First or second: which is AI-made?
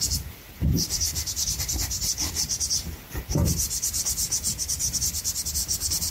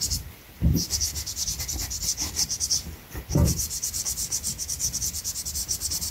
first